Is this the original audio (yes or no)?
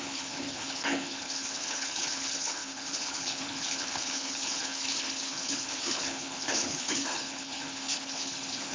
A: no